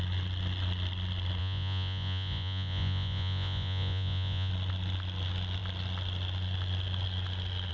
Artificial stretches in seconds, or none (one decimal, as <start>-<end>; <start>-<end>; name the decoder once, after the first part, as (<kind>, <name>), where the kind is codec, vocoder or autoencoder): 1.4-4.5 (vocoder, Vocos)